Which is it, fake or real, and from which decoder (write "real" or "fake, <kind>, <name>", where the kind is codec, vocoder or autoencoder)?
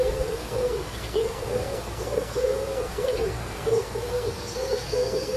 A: fake, codec, SNAC